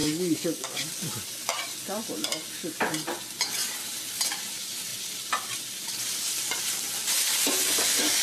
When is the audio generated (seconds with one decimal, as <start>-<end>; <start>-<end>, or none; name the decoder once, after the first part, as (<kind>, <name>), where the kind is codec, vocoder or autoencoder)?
0.0-0.9 (codec, DAC)